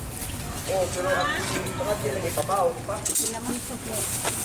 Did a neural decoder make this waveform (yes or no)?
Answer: no